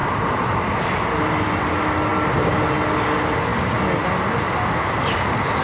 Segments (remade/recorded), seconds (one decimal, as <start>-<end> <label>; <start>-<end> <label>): 0.0-1.7 remade; 1.7-2.1 recorded; 2.1-2.6 remade; 2.6-5.6 recorded